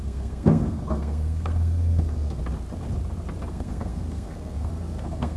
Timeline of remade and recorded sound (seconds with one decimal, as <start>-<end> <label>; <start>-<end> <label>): 0.0-2.4 remade; 2.4-3.5 recorded; 3.5-5.4 remade